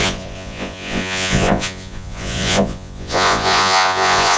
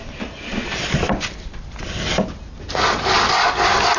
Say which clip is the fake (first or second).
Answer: first